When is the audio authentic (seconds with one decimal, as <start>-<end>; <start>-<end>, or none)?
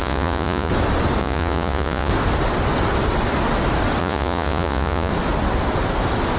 0.7-1.2; 2.1-4.0; 5.1-6.4